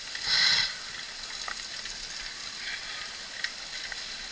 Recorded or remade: recorded